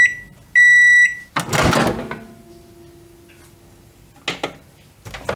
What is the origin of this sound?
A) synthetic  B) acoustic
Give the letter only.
B